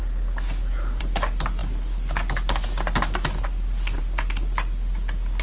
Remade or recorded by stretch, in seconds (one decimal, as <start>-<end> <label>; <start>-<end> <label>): 0.0-5.4 recorded